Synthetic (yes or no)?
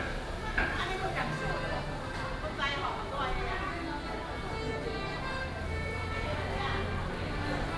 no